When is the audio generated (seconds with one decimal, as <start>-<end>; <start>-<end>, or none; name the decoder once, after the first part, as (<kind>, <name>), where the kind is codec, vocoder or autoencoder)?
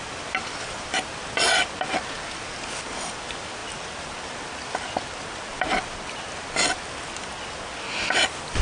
none